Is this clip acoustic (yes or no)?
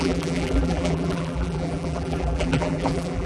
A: no